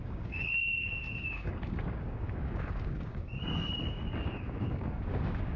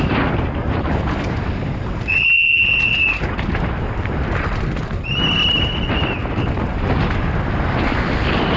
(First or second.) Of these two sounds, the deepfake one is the first